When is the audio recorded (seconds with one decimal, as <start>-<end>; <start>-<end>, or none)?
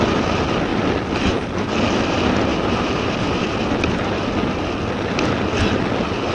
0.0-6.3